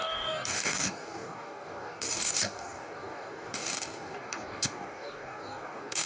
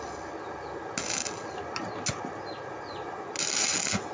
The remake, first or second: first